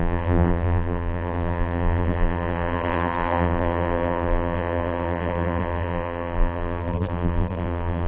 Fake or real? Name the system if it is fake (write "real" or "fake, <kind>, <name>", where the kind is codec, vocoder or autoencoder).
fake, vocoder, BigVGAN v2